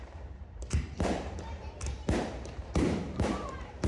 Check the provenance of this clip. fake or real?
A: fake